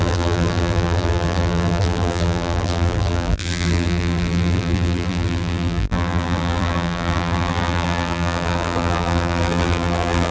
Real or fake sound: fake